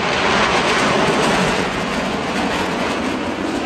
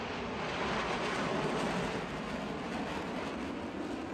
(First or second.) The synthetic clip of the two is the first